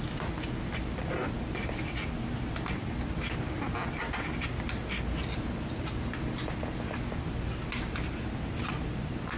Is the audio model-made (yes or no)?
no